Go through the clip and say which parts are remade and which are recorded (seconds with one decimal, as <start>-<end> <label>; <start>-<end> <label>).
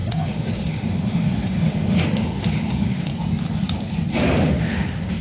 0.0-3.1 remade; 3.1-4.1 recorded; 4.1-5.2 remade